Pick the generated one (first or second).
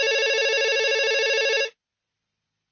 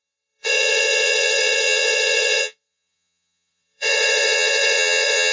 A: second